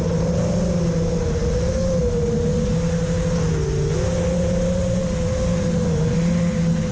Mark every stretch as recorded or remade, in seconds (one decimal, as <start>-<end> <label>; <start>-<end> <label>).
0.0-6.9 recorded